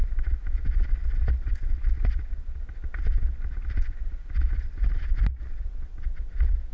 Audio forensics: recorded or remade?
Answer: recorded